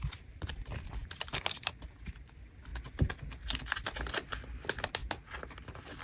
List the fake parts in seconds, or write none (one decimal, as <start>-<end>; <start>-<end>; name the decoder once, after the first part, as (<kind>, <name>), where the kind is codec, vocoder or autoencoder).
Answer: 0.0-2.7 (vocoder, BigVGAN v2); 4.3-5.0